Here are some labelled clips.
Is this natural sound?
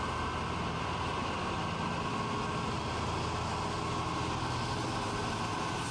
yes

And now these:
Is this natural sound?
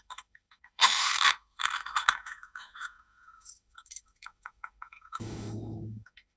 no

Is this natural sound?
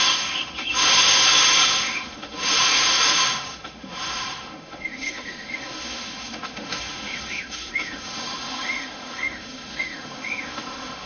no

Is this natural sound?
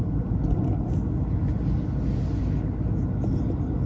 yes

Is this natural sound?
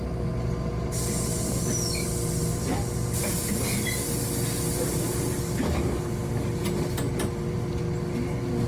yes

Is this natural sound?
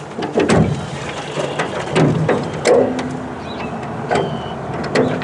yes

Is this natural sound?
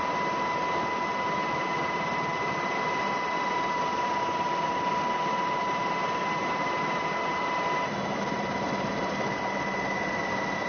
yes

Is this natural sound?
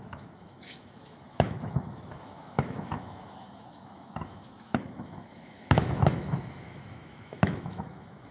no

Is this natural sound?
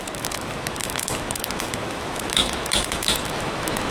no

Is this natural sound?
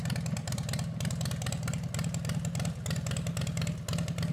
yes